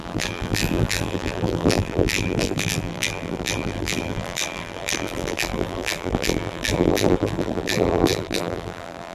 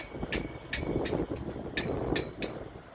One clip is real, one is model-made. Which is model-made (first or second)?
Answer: first